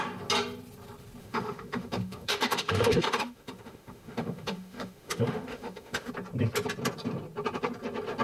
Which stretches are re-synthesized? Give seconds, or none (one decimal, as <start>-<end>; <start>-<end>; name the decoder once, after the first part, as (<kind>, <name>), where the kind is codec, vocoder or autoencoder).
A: 1.2-6.1 (autoencoder, DAC-VAE)